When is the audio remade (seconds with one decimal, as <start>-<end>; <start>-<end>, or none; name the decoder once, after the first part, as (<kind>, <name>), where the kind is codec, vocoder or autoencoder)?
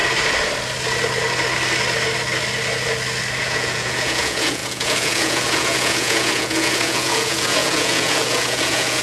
3.4-9.0 (vocoder, Vocos)